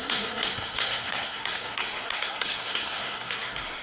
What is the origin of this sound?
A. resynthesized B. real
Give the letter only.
A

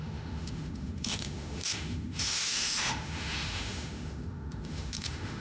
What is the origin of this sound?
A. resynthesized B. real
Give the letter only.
A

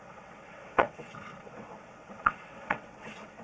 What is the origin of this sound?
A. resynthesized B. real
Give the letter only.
A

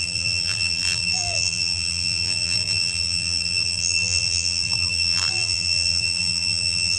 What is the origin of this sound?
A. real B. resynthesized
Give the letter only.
B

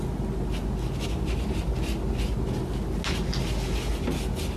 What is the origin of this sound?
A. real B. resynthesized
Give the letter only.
A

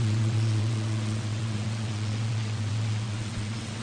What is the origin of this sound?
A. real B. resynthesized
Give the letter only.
B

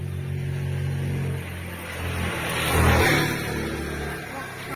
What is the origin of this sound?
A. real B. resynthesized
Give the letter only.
A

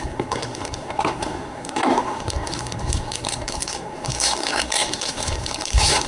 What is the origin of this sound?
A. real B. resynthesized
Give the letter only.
B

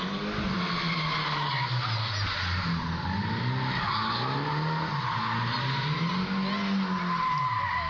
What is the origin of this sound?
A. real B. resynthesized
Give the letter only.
A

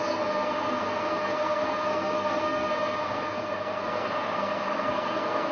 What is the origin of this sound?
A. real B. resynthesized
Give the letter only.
B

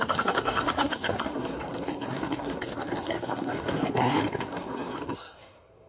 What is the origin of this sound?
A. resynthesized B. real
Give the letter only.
A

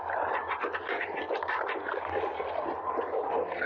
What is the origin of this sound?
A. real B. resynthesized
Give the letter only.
A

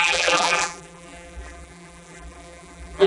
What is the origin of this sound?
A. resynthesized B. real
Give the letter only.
A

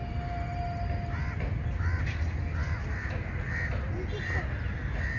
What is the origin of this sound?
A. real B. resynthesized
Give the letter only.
A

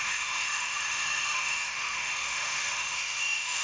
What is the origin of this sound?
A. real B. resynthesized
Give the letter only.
B